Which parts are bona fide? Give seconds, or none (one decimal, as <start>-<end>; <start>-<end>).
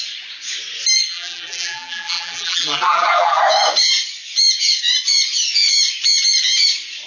0.0-1.1; 3.4-7.1